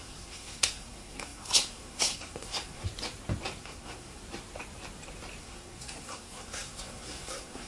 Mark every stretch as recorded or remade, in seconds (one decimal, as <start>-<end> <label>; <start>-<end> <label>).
0.0-2.9 remade; 2.9-3.6 recorded; 3.6-4.2 remade; 4.2-5.4 recorded; 5.4-7.7 remade